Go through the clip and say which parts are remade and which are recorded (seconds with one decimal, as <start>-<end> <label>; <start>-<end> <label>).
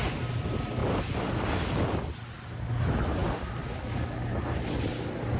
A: 0.0-5.4 recorded